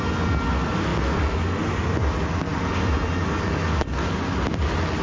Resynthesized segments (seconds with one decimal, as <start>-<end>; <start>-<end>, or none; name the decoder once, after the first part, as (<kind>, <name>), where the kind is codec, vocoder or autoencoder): none